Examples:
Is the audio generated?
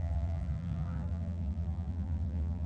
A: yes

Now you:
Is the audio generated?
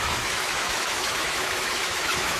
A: yes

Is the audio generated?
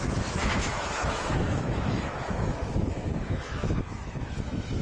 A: yes